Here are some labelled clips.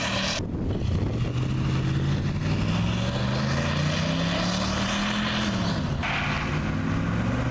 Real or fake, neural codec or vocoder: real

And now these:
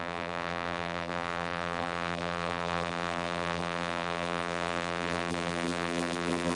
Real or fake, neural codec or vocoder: fake, vocoder, BigVGAN v2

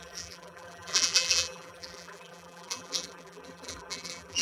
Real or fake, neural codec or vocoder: fake, vocoder, BigVGAN v2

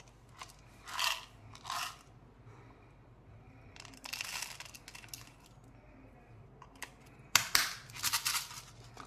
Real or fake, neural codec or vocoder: real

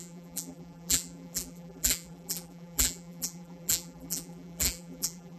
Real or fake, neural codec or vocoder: fake, vocoder, BigVGAN v2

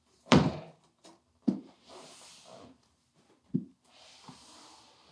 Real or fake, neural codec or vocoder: fake, vocoder, BigVGAN v2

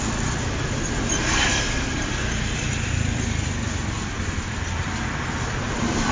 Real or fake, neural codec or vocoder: fake, vocoder, BigVGAN v2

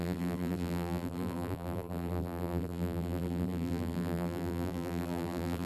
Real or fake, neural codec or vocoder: fake, vocoder, BigVGAN v2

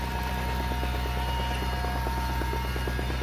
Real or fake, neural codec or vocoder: real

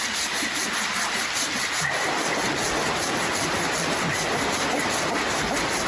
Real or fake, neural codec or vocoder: real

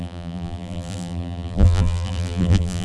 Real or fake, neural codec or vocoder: fake, vocoder, BigVGAN v2